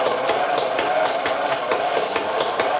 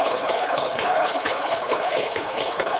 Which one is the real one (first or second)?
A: first